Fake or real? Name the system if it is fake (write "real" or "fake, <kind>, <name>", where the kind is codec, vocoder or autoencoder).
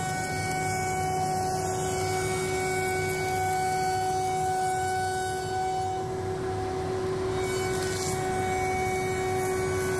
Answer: real